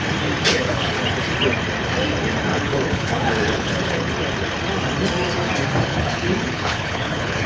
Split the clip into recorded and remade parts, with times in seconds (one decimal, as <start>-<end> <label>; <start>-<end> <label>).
0.0-0.5 recorded; 0.5-1.0 remade; 1.0-2.5 recorded; 2.5-4.1 remade; 4.1-5.9 recorded; 5.9-7.5 remade